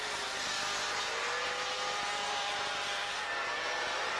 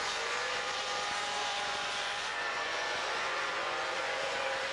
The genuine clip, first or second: first